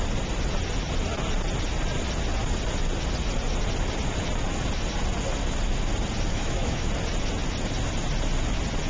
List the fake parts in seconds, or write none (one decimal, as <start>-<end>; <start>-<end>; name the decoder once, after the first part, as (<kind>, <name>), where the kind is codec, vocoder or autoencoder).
6.3-6.9 (autoencoder, DAC-VAE)